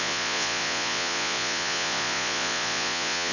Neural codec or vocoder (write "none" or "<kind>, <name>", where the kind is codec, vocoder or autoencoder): vocoder, Vocos